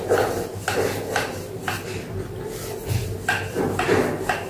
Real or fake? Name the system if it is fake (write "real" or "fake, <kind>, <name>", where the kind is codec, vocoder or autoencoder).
real